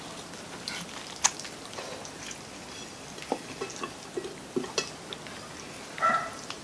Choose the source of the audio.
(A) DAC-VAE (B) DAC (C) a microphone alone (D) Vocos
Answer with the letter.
C